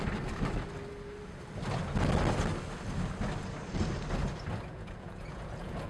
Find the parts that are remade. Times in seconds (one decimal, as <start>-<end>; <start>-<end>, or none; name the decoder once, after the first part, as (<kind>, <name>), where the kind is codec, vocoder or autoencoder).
4.7-5.9 (vocoder, Vocos)